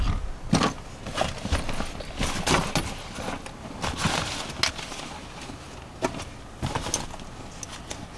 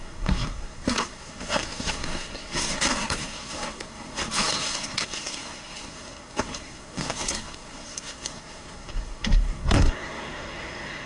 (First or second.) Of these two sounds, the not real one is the second